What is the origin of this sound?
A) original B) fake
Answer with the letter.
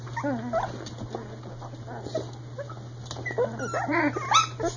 A